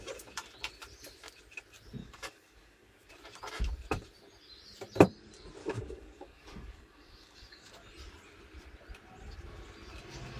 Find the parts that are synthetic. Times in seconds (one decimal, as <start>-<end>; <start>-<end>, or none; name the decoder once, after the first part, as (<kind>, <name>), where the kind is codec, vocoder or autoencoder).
2.0-3.1 (codec, DAC); 5.6-7.7